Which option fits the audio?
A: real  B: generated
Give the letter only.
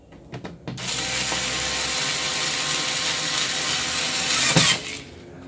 A